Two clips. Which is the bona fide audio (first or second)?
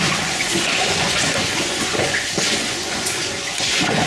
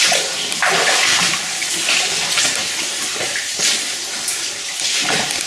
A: second